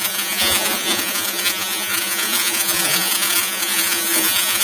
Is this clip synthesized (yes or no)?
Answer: yes